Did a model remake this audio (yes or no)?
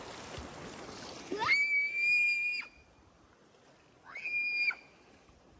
no